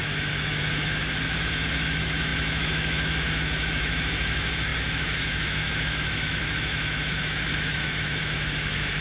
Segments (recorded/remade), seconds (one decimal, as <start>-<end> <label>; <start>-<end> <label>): 0.0-9.0 remade